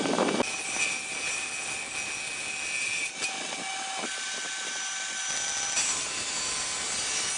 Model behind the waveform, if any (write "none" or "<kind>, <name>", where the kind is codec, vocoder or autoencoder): none